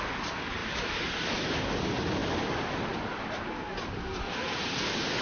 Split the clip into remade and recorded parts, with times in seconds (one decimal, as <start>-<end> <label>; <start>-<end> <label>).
0.0-5.2 recorded